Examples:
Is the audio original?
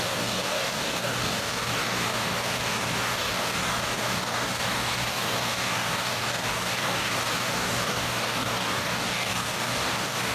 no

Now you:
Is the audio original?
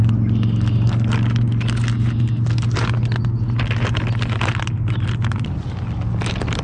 yes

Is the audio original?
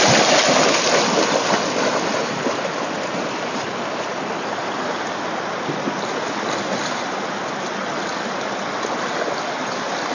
yes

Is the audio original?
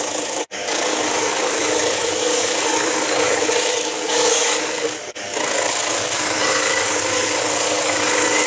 no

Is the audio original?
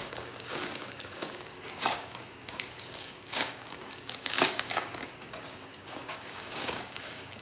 no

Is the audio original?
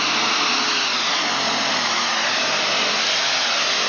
yes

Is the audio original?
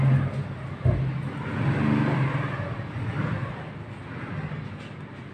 yes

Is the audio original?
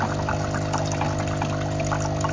yes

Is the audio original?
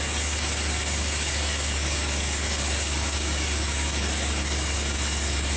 no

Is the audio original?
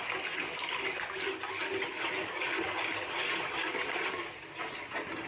yes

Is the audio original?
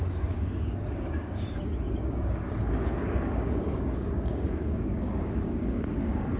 no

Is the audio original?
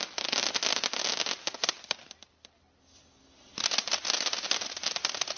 yes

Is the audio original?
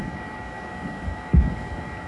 no